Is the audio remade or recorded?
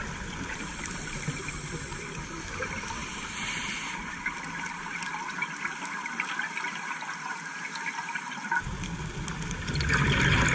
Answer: recorded